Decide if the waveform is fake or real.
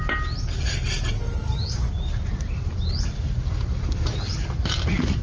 real